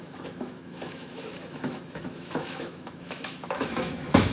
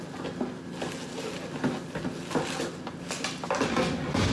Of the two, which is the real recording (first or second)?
second